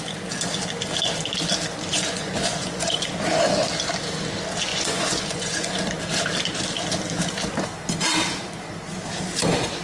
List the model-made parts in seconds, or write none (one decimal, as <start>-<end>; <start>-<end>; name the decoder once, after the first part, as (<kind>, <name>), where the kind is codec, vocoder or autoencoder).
1.9-3.1 (vocoder, Vocos); 4.7-5.7